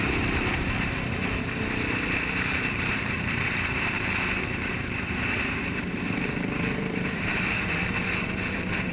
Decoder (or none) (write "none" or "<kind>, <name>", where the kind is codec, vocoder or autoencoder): vocoder, BigVGAN v2